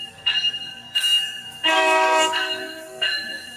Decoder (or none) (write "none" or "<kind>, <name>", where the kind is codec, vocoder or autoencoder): codec, SNAC